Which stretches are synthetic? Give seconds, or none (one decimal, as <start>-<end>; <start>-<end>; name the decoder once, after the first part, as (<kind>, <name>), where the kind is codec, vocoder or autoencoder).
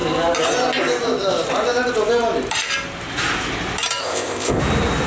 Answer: 4.0-4.6 (codec, ZipCodec)